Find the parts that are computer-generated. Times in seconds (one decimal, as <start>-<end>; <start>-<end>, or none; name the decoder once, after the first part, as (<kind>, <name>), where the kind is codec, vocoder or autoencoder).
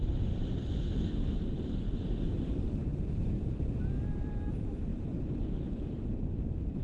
none